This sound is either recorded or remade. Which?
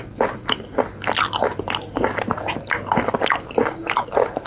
recorded